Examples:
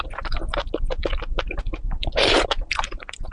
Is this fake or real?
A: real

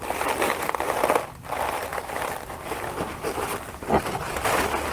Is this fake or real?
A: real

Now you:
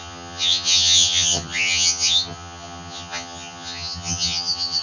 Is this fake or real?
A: fake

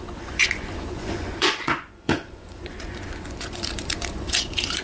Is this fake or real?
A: fake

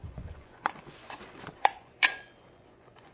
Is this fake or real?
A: fake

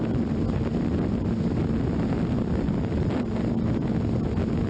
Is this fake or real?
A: real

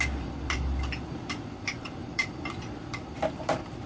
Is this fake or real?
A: fake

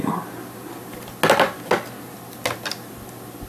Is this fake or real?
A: real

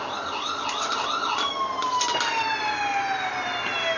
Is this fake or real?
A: real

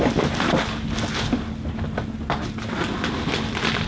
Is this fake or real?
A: real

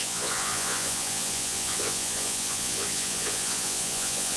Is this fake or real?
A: fake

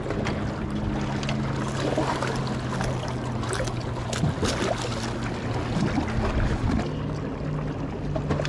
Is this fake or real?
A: real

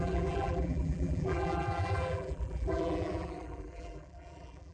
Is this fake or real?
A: fake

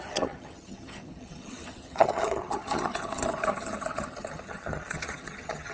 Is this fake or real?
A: fake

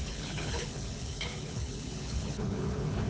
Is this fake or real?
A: fake